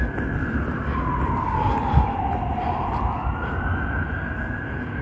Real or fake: real